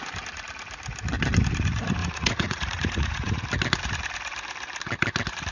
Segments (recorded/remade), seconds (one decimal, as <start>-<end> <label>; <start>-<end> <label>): 0.0-2.0 recorded; 2.0-3.4 remade; 3.4-5.5 recorded